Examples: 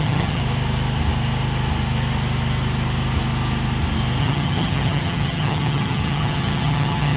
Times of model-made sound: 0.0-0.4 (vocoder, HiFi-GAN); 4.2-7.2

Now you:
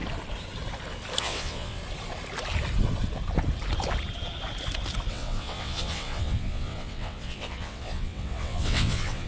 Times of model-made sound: 1.2-1.8 (vocoder, WaveNeXt); 5.1-9.3